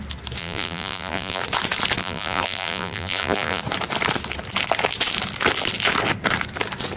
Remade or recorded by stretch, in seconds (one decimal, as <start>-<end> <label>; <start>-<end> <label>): 0.0-0.4 recorded; 0.4-1.4 remade; 1.4-2.0 recorded; 2.0-3.6 remade; 3.6-7.0 recorded